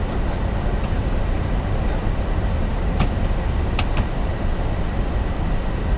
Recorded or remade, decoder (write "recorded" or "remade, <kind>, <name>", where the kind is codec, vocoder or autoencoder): recorded